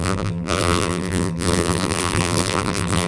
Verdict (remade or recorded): remade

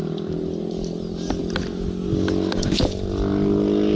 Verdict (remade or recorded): recorded